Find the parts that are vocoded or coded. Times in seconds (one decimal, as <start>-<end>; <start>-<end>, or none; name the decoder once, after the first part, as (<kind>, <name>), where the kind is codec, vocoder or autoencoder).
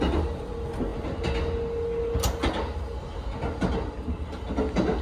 none